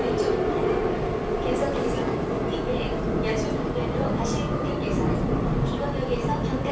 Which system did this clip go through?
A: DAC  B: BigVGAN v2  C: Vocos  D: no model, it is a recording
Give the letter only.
D